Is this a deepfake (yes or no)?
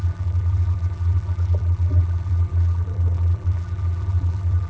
yes